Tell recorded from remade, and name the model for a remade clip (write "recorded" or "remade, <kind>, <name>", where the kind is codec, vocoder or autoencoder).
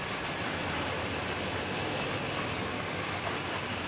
recorded